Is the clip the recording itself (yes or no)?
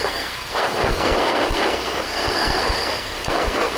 no